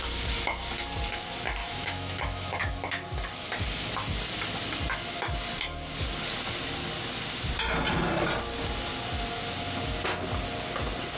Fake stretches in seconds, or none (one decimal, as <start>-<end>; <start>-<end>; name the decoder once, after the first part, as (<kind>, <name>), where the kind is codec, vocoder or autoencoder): 1.6-2.6 (autoencoder, DAC-VAE)